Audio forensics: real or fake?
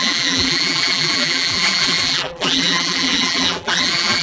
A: fake